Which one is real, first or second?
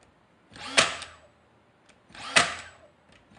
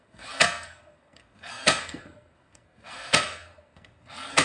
first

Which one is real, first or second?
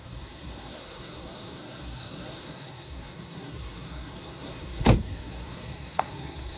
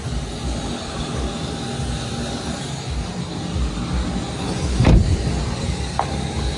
second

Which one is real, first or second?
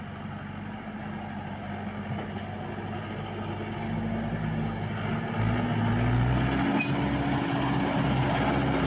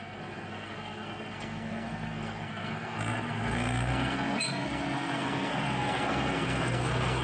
first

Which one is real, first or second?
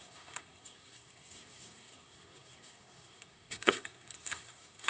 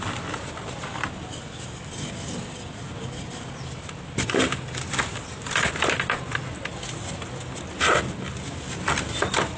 second